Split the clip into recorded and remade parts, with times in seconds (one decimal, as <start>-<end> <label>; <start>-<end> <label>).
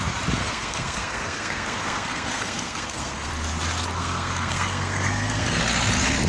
0.0-0.4 recorded; 0.4-3.3 remade; 3.3-4.0 recorded; 4.0-5.6 remade; 5.6-6.3 recorded